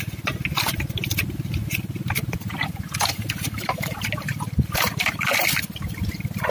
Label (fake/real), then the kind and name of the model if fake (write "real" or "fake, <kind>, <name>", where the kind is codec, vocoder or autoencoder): real